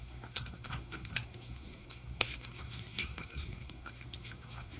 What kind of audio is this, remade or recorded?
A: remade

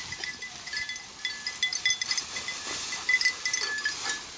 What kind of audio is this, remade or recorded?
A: recorded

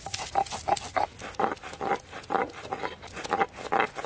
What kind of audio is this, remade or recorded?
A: recorded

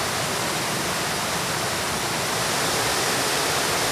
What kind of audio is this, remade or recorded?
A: recorded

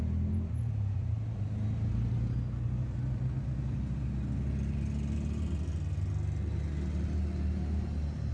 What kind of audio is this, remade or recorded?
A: recorded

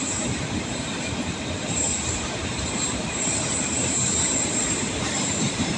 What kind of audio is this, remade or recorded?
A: remade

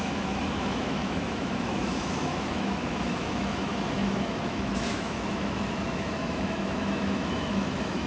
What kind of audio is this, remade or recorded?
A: remade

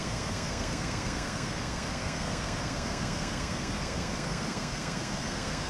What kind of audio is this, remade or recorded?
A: remade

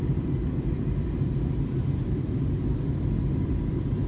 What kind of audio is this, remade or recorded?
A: recorded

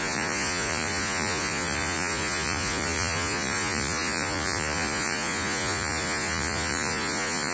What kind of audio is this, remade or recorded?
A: remade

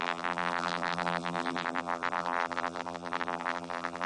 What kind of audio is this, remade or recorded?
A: remade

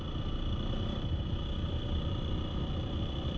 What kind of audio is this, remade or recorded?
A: recorded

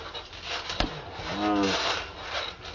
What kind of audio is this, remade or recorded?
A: recorded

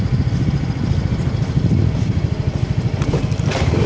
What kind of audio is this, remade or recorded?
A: recorded